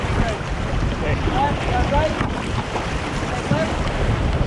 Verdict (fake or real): real